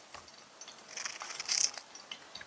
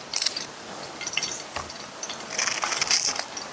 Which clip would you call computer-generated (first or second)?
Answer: second